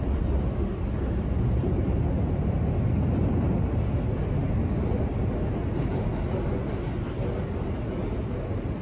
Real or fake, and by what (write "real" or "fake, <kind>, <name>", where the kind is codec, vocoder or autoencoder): real